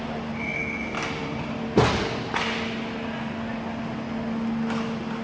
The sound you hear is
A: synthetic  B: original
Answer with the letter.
B